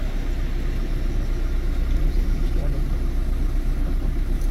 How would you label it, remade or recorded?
recorded